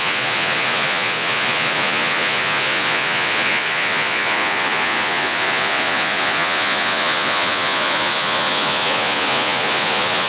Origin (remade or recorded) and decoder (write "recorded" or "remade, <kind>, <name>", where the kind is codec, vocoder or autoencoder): remade, vocoder, Vocos